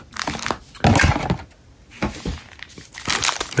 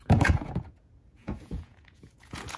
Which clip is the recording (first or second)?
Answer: first